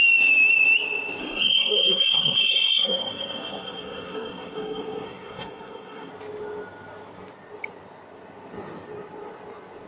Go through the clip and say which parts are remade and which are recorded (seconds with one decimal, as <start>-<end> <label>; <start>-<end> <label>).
0.0-1.2 recorded; 1.2-6.1 remade; 6.1-9.9 recorded